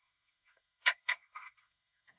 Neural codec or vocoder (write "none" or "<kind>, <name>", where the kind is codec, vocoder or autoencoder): codec, SNAC